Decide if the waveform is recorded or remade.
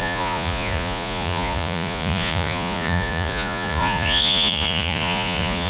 remade